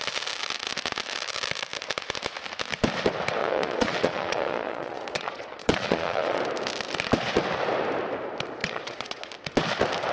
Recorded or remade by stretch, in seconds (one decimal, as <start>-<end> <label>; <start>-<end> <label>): 0.0-3.4 recorded; 3.4-6.4 remade; 6.4-8.6 recorded; 8.6-9.3 remade; 9.3-10.1 recorded